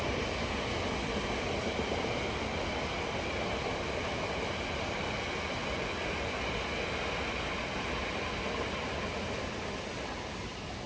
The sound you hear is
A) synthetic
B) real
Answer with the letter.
B